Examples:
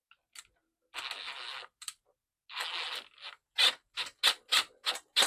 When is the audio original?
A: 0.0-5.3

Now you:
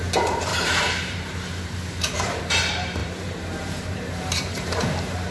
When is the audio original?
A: none

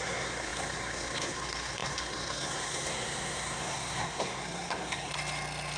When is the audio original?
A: 5.1-5.8

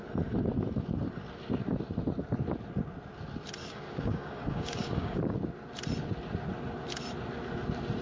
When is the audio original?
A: 0.0-3.6; 5.2-8.0

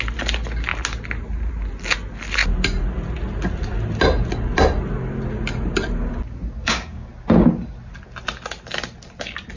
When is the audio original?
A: 0.0-6.6; 7.1-9.6

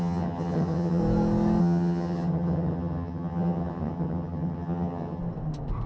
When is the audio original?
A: 1.0-1.6; 5.2-5.9